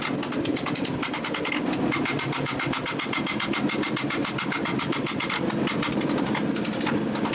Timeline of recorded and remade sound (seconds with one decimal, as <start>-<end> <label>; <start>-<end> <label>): 0.0-7.3 recorded